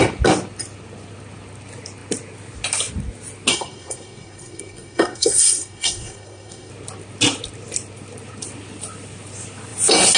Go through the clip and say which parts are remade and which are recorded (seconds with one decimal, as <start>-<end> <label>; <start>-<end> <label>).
0.0-3.5 recorded; 3.5-6.7 remade; 6.7-10.2 recorded

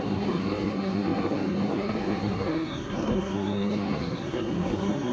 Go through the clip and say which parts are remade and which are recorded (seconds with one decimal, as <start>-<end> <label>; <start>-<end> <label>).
0.0-5.1 remade